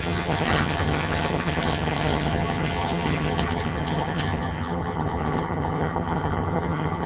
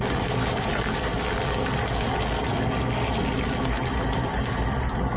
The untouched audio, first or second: second